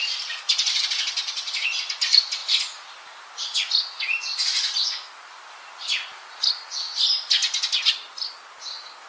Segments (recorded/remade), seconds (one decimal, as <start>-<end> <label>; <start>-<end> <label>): 0.0-9.1 recorded